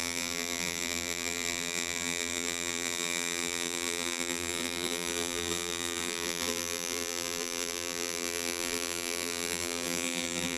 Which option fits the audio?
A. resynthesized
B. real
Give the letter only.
A